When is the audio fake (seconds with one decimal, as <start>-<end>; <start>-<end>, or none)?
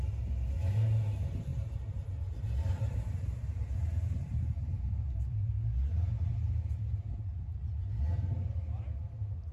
1.5-5.5